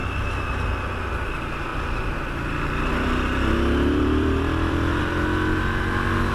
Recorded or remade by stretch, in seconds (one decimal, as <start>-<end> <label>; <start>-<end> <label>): 0.0-1.7 recorded; 1.7-5.0 remade; 5.0-6.3 recorded